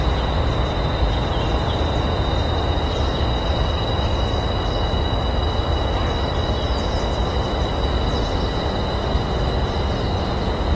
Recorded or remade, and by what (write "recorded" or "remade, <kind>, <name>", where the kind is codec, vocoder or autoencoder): recorded